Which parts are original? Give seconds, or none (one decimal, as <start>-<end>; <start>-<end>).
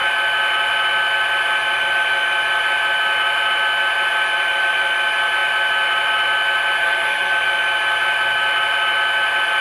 0.0-6.8; 7.3-9.6